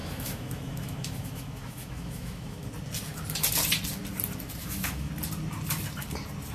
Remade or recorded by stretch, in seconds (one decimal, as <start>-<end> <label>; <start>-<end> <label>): 0.0-2.7 remade; 2.7-4.6 recorded; 4.6-5.1 remade; 5.1-6.5 recorded